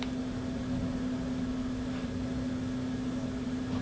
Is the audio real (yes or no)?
yes